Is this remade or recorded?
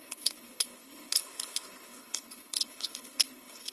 remade